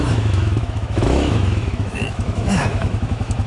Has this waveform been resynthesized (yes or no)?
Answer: yes